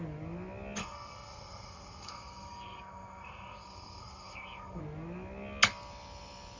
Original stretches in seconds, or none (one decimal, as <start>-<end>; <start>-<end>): 0.0-0.8; 4.8-6.6